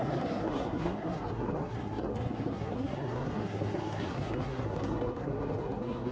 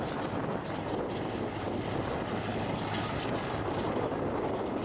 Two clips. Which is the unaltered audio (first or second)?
second